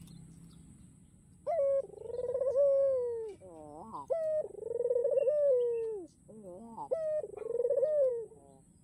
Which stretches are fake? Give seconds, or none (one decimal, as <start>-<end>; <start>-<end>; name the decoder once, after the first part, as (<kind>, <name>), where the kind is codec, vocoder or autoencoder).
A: 1.4-2.5 (vocoder, BigVGAN v2)